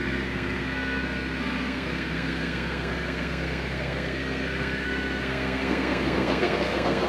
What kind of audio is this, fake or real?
fake